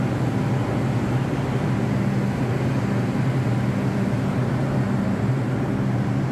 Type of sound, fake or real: real